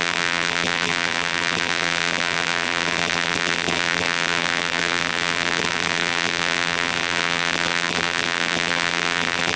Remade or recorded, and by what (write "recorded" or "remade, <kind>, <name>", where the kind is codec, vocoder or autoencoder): remade, vocoder, BigVGAN v2